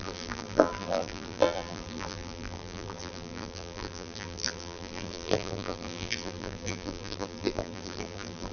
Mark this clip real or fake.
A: fake